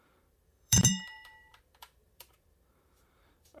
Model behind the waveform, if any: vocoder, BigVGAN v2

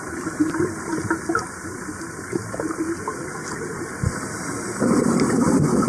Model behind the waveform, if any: none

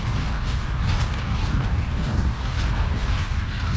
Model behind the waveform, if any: codec, DAC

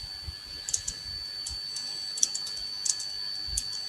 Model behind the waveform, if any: none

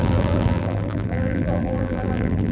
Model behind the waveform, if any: vocoder, BigVGAN v2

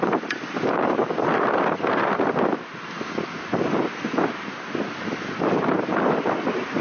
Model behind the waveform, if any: none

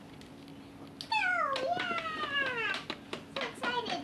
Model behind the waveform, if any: none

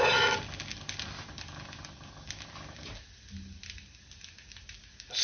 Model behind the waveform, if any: none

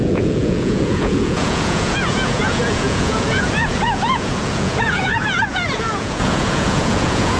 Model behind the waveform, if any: vocoder, Vocos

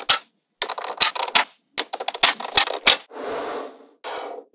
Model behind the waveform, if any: none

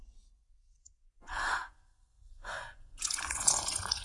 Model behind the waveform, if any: vocoder, Vocos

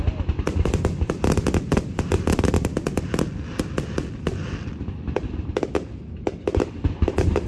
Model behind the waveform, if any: none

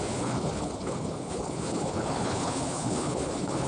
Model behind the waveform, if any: codec, HILCodec